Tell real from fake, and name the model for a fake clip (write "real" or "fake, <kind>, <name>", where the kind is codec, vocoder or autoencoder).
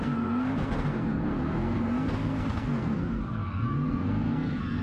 fake, codec, SNAC